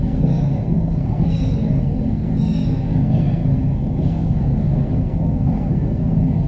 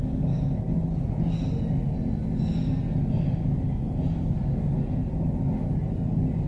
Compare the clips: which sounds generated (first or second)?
first